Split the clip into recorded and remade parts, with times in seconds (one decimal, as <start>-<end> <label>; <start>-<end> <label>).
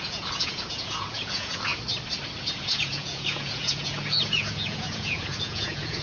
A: 0.0-1.7 remade; 1.7-2.4 recorded; 2.4-6.0 remade